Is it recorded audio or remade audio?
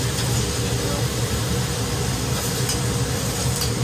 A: recorded